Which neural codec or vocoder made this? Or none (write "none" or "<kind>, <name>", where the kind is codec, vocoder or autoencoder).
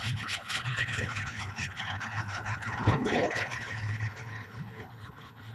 codec, HILCodec